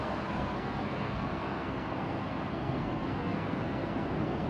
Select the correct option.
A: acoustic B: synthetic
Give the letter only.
B